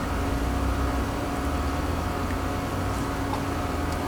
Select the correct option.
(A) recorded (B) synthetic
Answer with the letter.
A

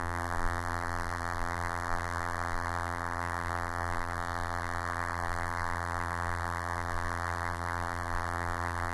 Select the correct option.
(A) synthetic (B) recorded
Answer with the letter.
A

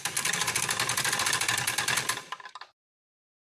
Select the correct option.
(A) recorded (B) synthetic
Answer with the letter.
A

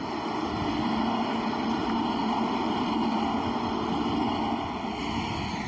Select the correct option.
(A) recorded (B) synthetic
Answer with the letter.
B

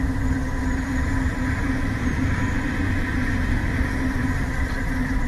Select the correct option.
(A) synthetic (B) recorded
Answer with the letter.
A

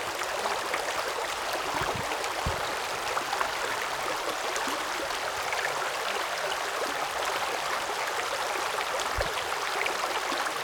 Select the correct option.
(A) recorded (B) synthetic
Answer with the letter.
A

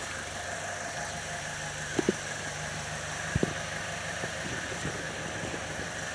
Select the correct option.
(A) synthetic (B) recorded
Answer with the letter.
A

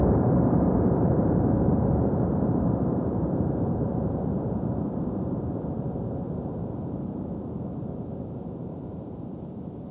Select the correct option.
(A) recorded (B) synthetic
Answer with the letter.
B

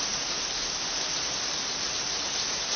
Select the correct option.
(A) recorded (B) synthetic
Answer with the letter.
B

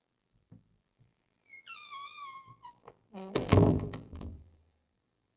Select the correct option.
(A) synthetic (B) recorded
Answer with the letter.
A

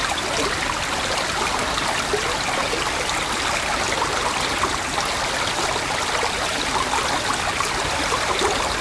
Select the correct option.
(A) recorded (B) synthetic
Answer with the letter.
A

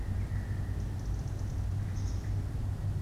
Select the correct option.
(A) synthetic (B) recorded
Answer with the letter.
B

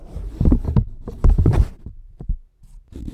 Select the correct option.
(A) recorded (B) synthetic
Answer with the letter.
A